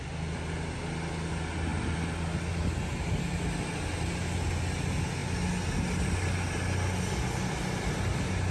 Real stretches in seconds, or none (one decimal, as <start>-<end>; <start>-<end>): 0.0-8.5